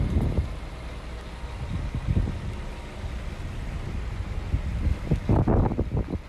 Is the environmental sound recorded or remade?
recorded